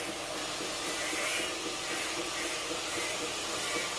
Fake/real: real